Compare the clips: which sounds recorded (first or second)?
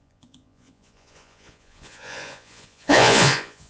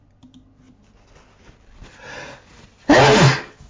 second